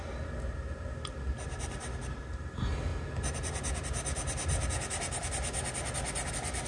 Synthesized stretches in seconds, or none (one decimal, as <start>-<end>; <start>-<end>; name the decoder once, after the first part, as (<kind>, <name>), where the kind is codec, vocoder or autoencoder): none